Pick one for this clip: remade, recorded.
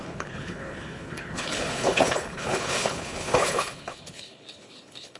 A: remade